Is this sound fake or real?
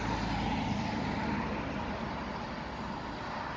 real